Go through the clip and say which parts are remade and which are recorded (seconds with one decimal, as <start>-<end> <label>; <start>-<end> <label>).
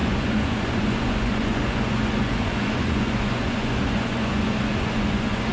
0.0-5.5 remade